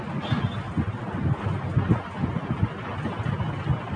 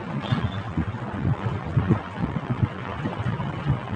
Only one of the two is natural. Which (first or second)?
first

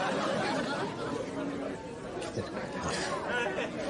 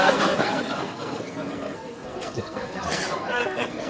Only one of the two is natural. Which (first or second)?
first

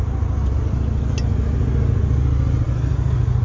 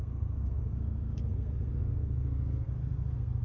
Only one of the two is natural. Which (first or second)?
first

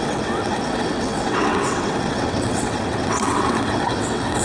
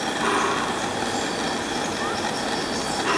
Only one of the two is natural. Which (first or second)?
second